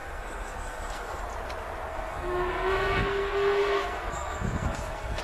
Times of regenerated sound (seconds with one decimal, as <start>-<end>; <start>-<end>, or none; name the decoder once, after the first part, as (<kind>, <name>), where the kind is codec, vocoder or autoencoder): 0.0-1.2 (codec, SNAC); 1.9-5.2